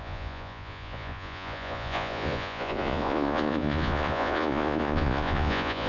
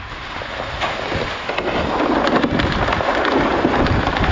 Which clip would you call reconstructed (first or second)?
first